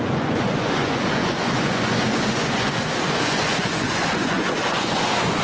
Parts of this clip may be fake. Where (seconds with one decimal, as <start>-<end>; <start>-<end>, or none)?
0.0-5.4